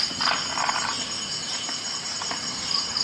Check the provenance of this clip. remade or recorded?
recorded